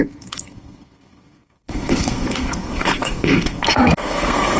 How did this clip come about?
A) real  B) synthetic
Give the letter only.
B